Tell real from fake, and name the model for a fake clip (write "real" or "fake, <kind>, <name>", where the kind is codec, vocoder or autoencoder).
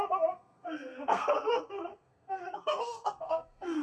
fake, codec, SNAC